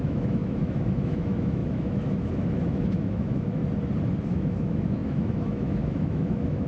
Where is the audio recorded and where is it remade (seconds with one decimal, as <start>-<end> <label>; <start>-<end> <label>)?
0.0-3.6 remade; 3.6-4.3 recorded; 4.3-6.7 remade